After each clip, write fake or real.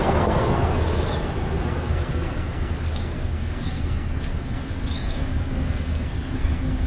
fake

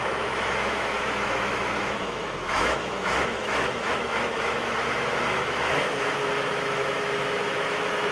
fake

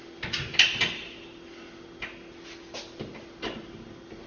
real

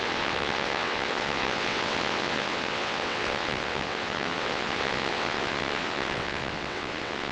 fake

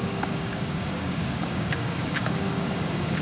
fake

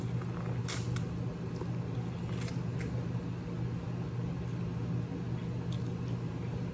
real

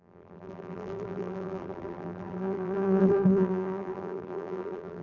fake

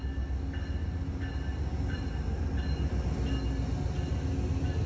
real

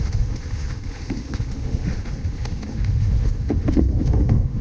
fake